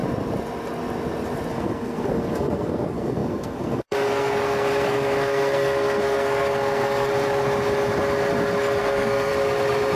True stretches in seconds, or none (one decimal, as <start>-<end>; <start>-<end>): 0.0-1.5; 7.1-8.8; 9.3-10.0